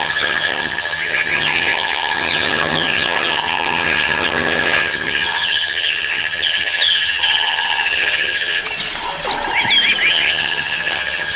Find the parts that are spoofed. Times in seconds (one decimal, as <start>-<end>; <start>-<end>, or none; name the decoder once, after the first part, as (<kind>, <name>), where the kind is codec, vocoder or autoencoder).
0.0-8.6 (vocoder, HiFi-GAN); 10.1-11.4